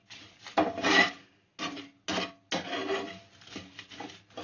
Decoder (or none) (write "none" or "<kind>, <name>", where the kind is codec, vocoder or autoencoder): none